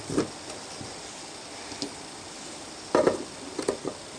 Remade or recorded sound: recorded